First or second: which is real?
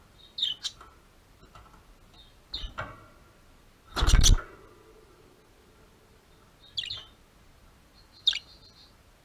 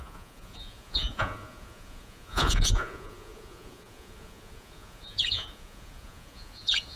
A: first